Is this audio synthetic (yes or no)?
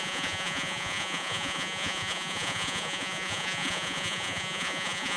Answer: yes